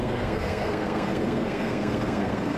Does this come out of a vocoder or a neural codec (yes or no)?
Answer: yes